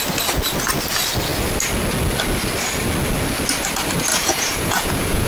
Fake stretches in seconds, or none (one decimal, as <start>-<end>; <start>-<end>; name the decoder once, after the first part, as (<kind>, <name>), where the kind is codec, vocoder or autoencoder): 4.1-5.3 (vocoder, Vocos)